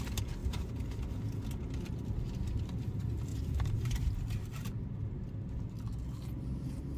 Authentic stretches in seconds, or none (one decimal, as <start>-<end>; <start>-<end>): 0.0-0.4; 1.0-3.3; 4.1-7.0